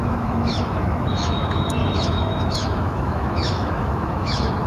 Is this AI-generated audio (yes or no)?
yes